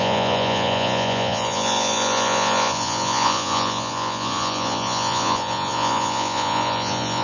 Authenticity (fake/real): fake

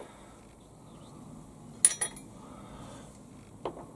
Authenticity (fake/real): real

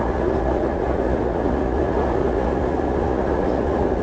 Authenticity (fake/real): fake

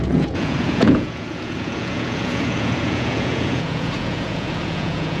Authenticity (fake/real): fake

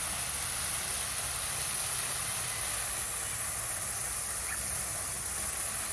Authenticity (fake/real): real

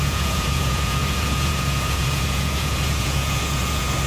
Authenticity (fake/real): fake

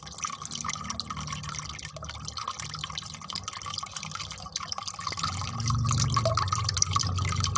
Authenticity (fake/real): real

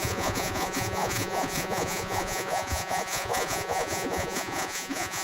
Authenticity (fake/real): fake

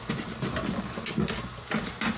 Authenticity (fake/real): real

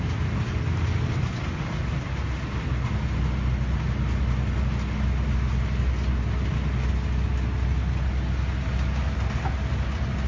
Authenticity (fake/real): real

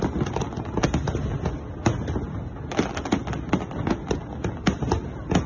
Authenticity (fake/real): real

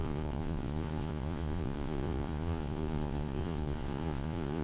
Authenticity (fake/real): fake